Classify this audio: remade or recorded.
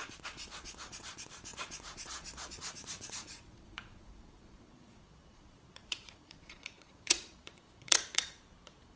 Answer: remade